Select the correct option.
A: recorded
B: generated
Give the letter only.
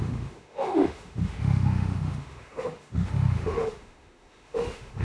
B